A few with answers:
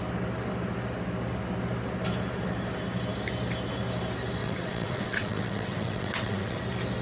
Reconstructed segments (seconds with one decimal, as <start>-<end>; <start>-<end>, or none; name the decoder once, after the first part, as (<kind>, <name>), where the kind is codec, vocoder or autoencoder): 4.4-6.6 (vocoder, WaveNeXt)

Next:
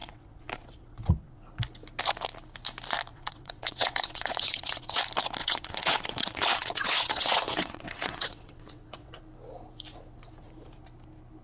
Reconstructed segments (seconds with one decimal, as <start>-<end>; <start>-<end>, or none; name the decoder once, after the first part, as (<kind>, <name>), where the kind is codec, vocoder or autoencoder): 0.0-1.4 (vocoder, WaveNeXt); 3.1-5.0; 5.4-9.2

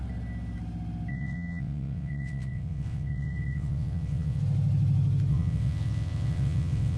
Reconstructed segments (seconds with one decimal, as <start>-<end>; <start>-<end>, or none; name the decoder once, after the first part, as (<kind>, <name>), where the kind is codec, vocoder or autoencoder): 1.1-4.4 (vocoder, WaveNeXt); 5.3-7.0

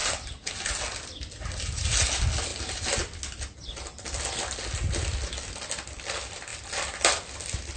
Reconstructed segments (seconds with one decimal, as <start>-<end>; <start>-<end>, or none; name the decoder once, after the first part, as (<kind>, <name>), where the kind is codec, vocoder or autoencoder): none

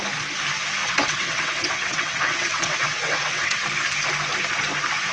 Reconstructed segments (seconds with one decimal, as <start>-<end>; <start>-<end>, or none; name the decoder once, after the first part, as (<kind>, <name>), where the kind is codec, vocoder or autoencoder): 0.8-3.6 (vocoder, WaveNeXt)